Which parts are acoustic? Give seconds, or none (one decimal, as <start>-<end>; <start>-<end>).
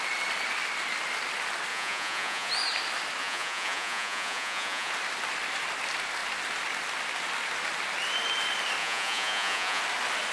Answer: 0.0-1.7; 2.5-3.2; 4.9-8.8; 9.8-10.3